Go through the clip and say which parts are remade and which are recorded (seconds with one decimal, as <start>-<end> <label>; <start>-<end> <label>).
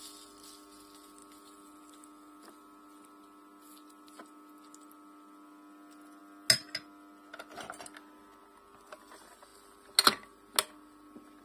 0.0-11.4 recorded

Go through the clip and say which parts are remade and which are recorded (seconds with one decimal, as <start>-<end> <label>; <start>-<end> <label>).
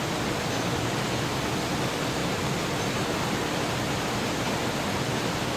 0.0-5.6 recorded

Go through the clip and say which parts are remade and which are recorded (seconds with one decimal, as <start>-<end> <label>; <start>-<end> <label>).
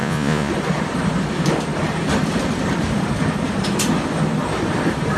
0.0-0.5 remade; 0.5-5.2 recorded